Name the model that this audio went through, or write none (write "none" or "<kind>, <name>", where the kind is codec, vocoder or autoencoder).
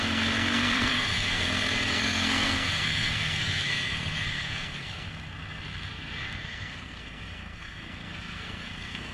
codec, SNAC